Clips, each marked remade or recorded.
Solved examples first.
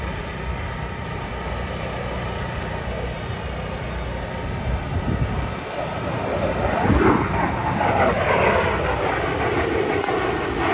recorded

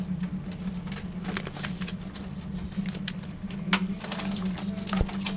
recorded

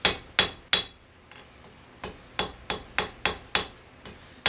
recorded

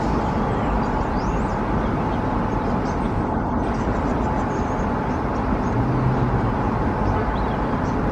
recorded